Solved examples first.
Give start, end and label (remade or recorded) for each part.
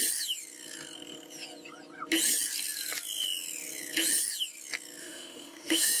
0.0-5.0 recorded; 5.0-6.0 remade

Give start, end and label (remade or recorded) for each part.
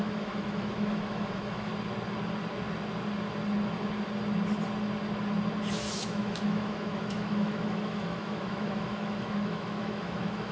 0.0-1.7 remade; 1.7-5.7 recorded; 5.7-10.5 remade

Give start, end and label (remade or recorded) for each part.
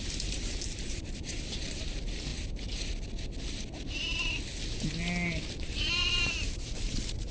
0.0-2.3 remade; 2.3-5.5 recorded; 5.5-7.3 remade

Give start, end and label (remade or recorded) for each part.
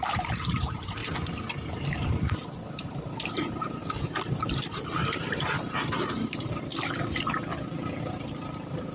0.0-1.0 remade; 1.0-1.7 recorded; 1.7-3.8 remade; 3.8-4.5 recorded; 4.5-6.7 remade; 6.7-8.0 recorded; 8.0-8.9 remade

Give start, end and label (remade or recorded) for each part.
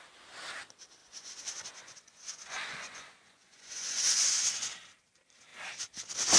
0.0-1.0 recorded; 1.0-4.7 remade; 4.7-6.4 recorded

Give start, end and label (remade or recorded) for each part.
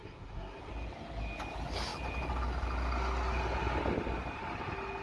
0.0-0.7 remade; 0.7-5.0 recorded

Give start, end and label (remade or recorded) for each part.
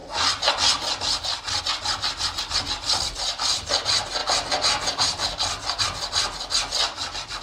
0.0-7.4 recorded